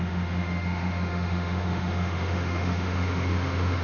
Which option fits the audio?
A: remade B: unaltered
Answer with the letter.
A